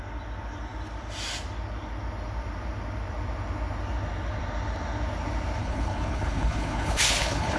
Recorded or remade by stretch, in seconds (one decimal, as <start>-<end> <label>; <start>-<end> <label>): 0.0-5.6 recorded; 5.6-7.6 remade